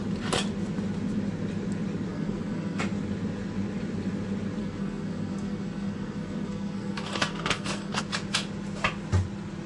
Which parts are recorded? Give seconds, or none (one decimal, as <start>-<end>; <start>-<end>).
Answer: 0.0-2.1; 2.8-4.6; 8.0-9.7